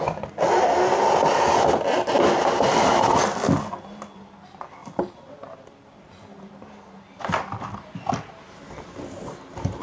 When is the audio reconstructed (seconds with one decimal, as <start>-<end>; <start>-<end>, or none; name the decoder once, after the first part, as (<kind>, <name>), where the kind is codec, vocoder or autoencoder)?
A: none